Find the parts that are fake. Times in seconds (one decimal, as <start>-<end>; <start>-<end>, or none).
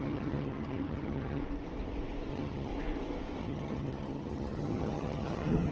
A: 0.0-1.4; 2.3-2.7; 3.4-5.7